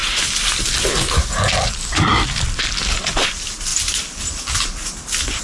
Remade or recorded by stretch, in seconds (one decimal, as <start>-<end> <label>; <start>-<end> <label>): 0.0-5.4 recorded